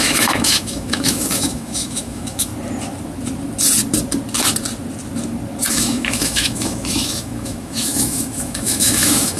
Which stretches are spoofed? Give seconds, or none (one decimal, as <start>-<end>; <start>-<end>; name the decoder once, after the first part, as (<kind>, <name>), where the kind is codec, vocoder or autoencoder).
0.0-2.5 (autoencoder, DAC-VAE); 5.7-9.4